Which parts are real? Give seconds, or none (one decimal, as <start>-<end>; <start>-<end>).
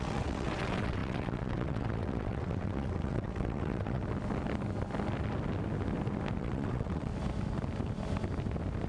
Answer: 4.0-6.4; 7.1-8.9